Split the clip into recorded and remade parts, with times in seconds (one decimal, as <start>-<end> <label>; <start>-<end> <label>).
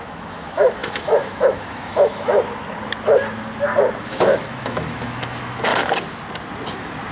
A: 0.0-2.3 remade; 2.3-4.0 recorded; 4.0-5.7 remade; 5.7-7.1 recorded